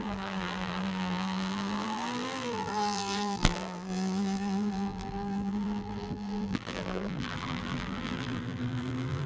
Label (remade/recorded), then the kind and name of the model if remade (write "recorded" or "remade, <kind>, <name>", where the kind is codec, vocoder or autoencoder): remade, vocoder, BigVGAN v2